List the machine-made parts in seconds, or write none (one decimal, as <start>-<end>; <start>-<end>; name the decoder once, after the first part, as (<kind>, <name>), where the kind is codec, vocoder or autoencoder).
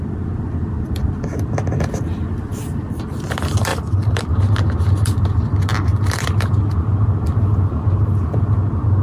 3.7-4.3 (vocoder, BigVGAN v2)